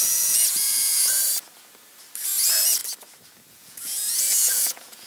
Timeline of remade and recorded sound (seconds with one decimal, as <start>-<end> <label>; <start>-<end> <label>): 0.0-1.2 remade; 1.2-2.4 recorded; 2.4-2.8 remade; 2.8-3.5 recorded; 3.5-5.1 remade